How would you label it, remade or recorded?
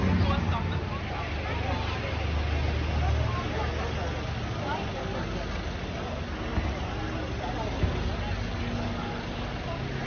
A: recorded